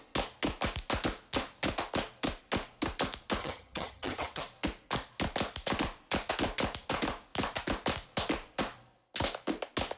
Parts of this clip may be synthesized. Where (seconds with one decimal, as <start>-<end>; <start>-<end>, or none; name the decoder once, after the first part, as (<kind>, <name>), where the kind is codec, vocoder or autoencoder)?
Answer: 3.4-4.4 (vocoder, HiFi-GAN)